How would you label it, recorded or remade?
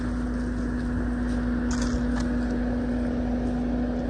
recorded